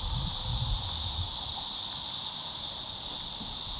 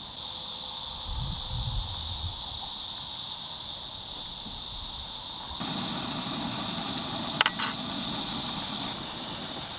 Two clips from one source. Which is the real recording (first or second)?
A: second